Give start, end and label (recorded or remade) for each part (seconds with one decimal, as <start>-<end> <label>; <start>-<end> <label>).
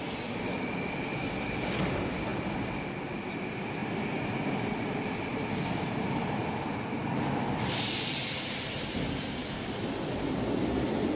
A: 0.0-5.3 recorded; 5.3-6.4 remade; 6.4-11.2 recorded